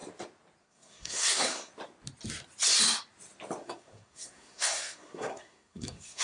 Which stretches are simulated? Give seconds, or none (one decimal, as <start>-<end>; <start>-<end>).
0.6-1.7; 3.6-6.2